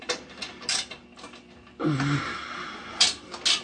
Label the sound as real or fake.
real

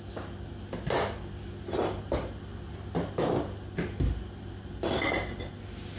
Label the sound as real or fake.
real